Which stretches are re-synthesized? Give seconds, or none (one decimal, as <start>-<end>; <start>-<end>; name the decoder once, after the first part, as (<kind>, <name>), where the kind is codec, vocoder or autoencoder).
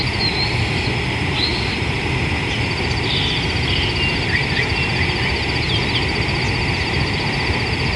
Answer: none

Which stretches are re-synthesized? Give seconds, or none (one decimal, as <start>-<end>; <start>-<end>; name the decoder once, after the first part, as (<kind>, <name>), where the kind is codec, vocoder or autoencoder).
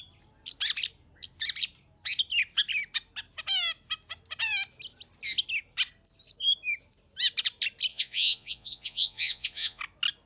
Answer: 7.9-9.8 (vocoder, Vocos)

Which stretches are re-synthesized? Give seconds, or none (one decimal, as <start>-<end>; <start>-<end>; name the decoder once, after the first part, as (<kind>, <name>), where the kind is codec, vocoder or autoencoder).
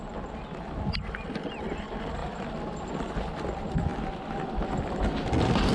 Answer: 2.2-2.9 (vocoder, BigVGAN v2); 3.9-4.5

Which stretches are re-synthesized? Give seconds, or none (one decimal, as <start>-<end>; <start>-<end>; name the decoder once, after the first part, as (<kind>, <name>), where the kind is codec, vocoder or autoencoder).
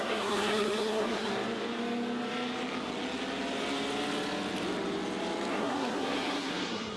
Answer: 0.0-1.3 (codec, SNAC); 5.5-7.0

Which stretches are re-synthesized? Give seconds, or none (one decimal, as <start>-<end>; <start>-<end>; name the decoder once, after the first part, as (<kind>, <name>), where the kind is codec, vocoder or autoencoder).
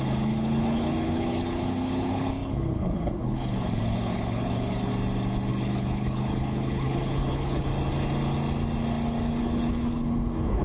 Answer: 0.0-4.9 (codec, HILCodec); 5.5-7.7; 9.4-10.6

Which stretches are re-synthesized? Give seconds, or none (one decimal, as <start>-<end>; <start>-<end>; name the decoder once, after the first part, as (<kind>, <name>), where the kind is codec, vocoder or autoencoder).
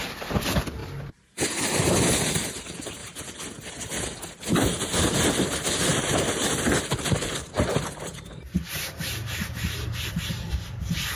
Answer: 0.0-0.8 (vocoder, BigVGAN v2); 2.2-3.0; 4.5-11.2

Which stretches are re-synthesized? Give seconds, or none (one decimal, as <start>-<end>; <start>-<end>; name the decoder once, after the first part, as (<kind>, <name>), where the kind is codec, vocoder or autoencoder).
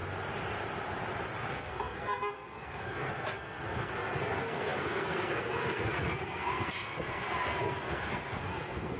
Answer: 1.5-9.0 (codec, SNAC)